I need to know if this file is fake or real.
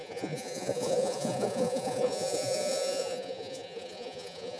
fake